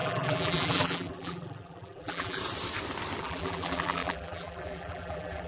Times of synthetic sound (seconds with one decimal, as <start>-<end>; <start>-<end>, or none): 0.0-2.4; 3.2-5.5